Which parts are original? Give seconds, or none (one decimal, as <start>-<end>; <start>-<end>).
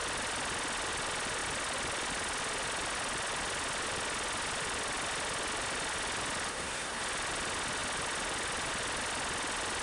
0.0-6.5; 7.0-9.8